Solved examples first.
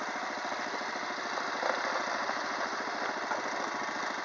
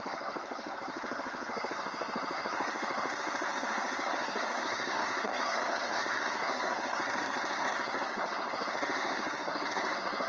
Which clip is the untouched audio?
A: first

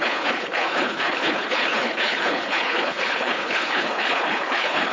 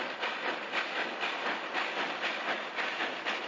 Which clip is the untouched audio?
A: second